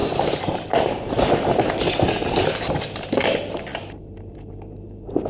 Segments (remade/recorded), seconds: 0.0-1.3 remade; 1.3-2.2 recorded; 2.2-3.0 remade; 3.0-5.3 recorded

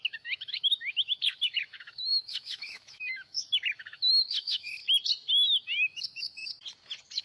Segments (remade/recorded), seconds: 0.0-4.8 remade; 4.8-5.6 recorded; 5.6-6.4 remade; 6.4-7.2 recorded

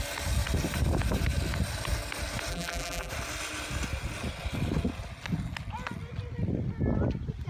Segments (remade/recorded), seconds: 0.0-2.5 recorded; 2.5-3.1 remade; 3.1-7.5 recorded

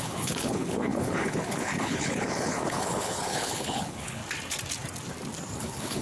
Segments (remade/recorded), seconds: 0.0-4.2 remade; 4.2-5.6 recorded; 5.6-6.0 remade

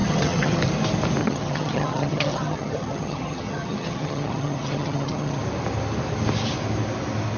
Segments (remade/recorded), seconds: 0.0-0.6 remade; 0.6-1.2 recorded; 1.2-5.4 remade; 5.4-7.4 recorded

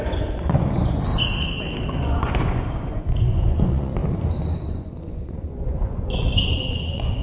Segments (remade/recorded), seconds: 0.0-1.1 remade; 1.1-2.0 recorded; 2.0-4.0 remade; 4.0-4.7 recorded; 4.7-7.2 remade

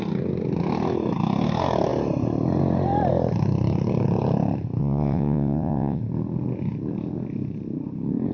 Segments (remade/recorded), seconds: 0.0-4.8 recorded; 4.8-6.0 remade; 6.0-8.3 recorded